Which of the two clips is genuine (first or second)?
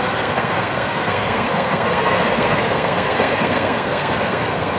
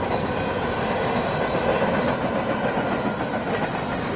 second